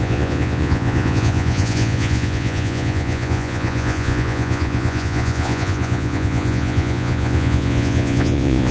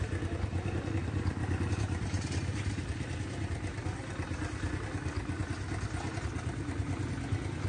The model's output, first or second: first